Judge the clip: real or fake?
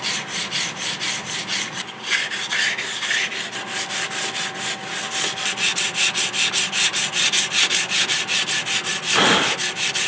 real